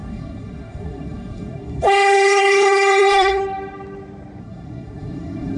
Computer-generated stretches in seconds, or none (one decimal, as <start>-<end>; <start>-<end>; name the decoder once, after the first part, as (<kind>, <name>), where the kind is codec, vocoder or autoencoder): 0.0-3.4 (codec, SNAC); 4.4-5.6